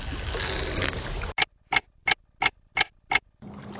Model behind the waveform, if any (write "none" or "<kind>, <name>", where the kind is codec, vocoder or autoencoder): none